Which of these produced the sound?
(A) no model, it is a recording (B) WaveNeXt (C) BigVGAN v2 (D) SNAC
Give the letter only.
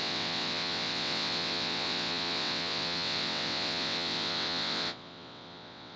B